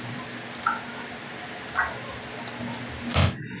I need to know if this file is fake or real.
real